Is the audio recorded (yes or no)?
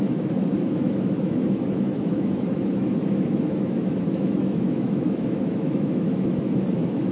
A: no